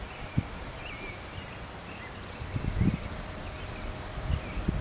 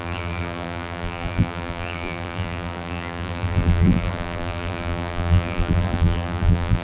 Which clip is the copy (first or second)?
second